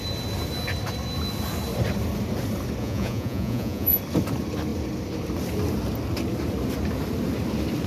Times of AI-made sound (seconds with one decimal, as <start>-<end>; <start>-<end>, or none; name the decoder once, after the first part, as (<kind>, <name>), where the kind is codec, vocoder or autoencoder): 2.8-4.0 (vocoder, Vocos)